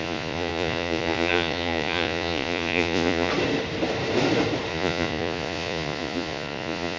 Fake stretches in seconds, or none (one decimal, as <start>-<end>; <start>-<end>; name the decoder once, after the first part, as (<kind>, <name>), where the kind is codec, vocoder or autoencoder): 0.0-3.3 (vocoder, Vocos); 4.7-7.0